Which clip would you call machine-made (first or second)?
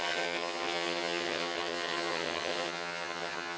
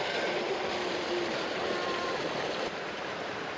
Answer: first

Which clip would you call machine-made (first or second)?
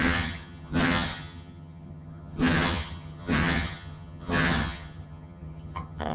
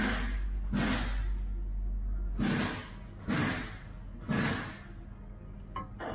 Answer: first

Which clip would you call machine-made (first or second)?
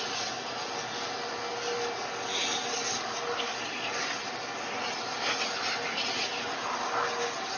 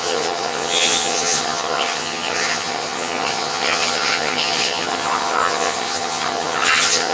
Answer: second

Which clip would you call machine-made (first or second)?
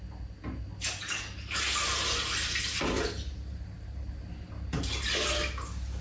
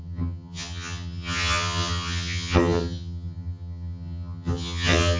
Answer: second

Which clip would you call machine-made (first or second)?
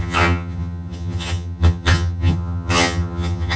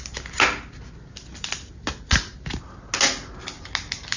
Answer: first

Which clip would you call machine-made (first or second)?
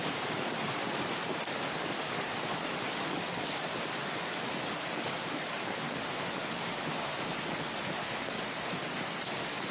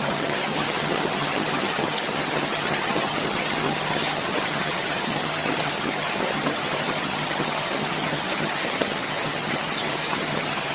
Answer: second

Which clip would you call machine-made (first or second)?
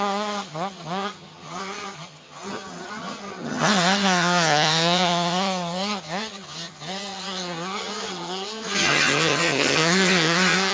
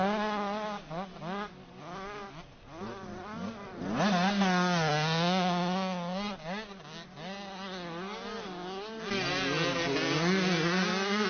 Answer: first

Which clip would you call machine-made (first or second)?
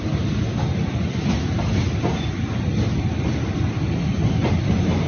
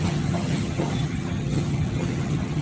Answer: second